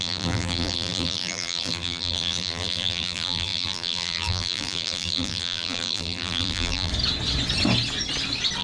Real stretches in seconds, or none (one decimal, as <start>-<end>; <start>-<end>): 6.9-8.6